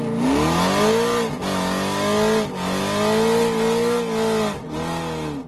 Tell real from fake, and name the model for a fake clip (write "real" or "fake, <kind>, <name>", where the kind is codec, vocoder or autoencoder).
real